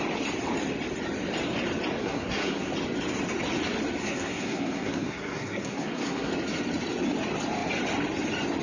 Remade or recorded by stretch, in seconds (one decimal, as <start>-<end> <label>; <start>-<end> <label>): 0.0-2.0 recorded; 2.0-2.7 remade; 2.7-4.0 recorded; 4.0-6.3 remade; 6.3-8.6 recorded